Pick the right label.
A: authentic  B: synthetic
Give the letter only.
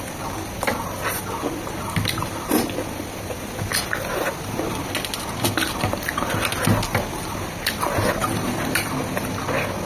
A